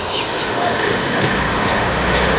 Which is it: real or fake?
fake